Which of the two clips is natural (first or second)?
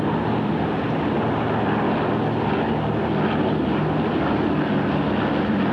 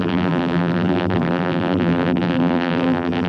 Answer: first